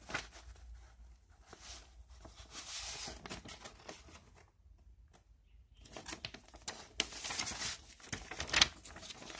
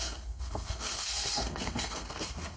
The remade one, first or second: second